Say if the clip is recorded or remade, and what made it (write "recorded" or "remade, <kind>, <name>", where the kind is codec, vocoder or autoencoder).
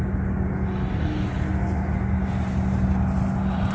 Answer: recorded